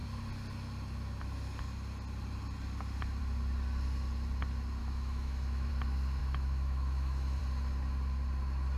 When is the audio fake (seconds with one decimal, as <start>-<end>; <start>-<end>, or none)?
4.8-5.7; 6.2-7.4